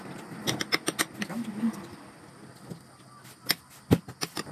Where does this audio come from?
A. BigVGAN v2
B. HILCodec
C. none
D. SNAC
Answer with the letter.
C